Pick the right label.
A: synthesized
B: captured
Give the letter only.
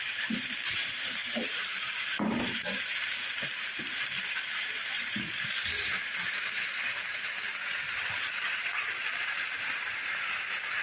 A